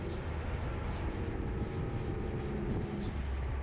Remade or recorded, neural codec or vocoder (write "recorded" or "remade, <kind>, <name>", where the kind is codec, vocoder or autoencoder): recorded